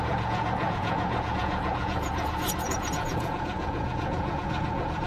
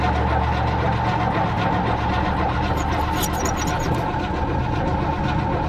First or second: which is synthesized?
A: first